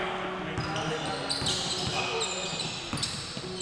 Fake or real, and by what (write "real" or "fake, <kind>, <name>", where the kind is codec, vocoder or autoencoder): real